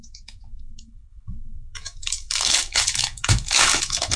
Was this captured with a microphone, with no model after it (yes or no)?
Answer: no